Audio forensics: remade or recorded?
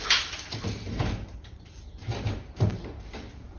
remade